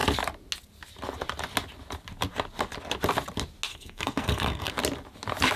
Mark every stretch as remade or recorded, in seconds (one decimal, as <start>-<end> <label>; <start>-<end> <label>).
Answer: 0.0-3.7 recorded; 3.7-4.7 remade; 4.7-5.6 recorded